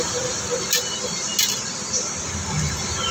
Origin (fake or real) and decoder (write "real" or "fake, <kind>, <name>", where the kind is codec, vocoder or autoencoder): real